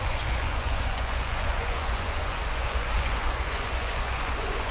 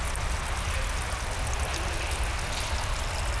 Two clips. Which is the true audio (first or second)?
second